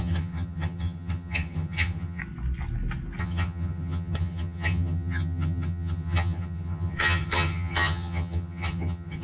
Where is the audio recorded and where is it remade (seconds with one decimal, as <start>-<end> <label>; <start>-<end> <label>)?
0.0-2.2 remade; 2.2-3.2 recorded; 3.2-9.2 remade